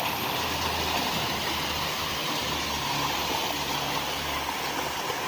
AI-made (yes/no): no